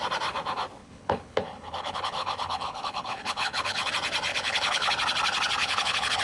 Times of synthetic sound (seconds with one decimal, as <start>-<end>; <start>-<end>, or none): 0.8-3.9; 4.3-4.9; 5.6-6.2